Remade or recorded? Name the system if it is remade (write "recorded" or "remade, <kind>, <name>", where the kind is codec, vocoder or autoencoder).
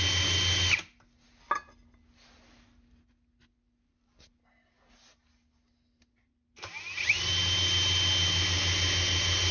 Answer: recorded